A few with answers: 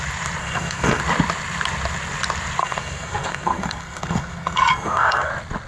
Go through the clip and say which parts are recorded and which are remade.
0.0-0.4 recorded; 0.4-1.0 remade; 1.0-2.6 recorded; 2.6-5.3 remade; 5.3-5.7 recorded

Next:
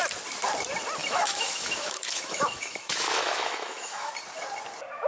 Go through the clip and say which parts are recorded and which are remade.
0.0-1.0 recorded; 1.0-4.1 remade; 4.1-5.1 recorded

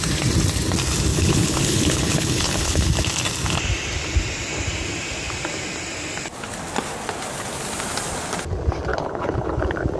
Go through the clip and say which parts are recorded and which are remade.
0.0-1.1 recorded; 1.1-2.9 remade; 2.9-8.9 recorded; 8.9-9.6 remade; 9.6-10.0 recorded

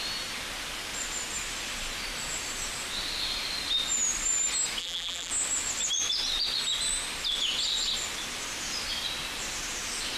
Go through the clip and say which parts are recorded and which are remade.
0.0-4.8 recorded; 4.8-5.3 remade; 5.3-10.2 recorded

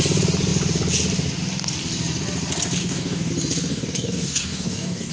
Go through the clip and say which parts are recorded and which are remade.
0.0-2.8 recorded; 2.8-3.3 remade; 3.3-3.7 recorded; 3.7-5.1 remade

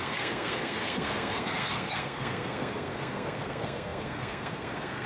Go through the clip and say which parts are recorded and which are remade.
0.0-5.1 remade